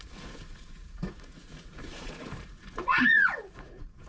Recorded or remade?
remade